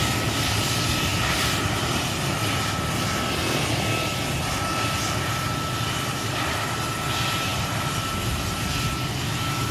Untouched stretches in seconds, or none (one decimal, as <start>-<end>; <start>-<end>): 0.0-9.7